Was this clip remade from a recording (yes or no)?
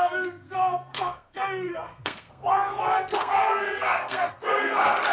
yes